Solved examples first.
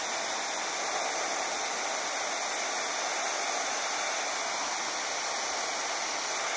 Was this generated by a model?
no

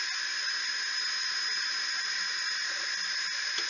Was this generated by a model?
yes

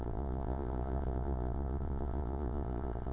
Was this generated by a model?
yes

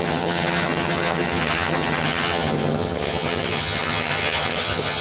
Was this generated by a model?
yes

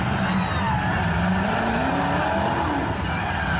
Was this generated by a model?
no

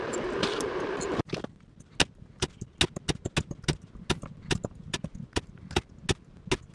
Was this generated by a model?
no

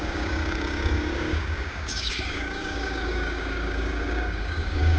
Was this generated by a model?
yes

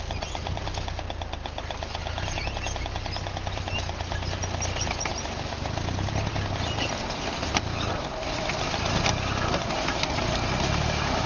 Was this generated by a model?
no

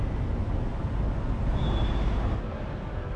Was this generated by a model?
no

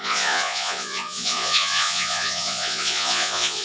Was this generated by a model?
yes